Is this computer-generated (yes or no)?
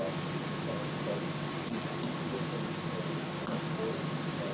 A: no